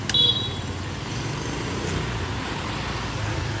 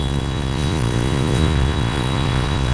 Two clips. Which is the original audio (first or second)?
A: first